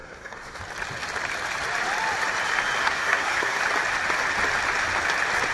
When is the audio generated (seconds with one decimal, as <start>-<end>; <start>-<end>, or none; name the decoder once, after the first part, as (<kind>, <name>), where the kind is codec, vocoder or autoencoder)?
0.0-0.6 (codec, SNAC); 2.8-3.6